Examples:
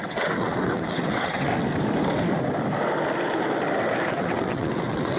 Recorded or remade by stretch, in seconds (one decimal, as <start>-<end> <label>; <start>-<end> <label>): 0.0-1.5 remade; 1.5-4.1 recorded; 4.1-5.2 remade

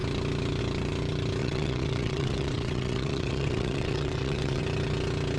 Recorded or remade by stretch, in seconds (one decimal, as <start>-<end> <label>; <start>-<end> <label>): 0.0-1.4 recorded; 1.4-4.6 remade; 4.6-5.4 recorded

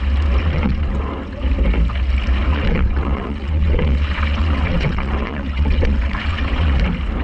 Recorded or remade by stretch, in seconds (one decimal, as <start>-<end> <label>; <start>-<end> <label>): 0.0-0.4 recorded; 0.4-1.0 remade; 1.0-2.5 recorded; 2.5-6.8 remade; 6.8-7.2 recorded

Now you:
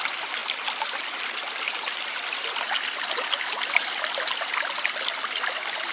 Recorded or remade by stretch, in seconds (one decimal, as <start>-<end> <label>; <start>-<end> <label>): 0.0-5.9 recorded

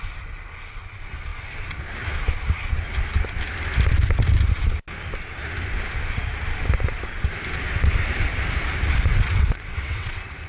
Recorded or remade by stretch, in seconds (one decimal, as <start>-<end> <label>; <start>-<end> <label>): 0.0-9.1 recorded; 9.1-10.1 remade; 10.1-10.5 recorded